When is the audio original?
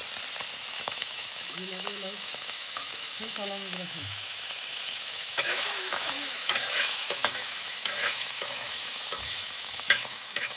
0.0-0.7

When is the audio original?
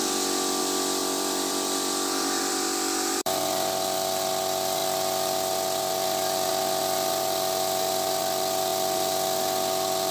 0.0-1.0; 4.2-4.8; 6.5-10.1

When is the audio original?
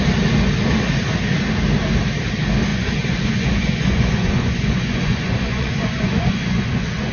0.0-2.7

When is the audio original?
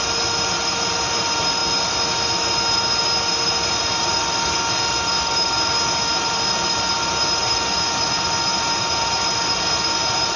0.0-10.4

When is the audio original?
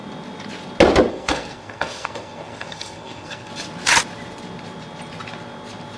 0.0-1.1; 3.5-6.0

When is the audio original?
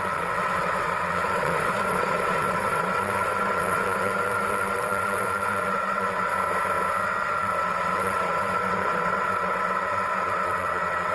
6.3-7.0